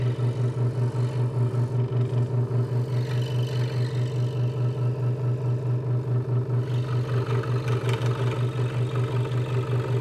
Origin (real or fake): real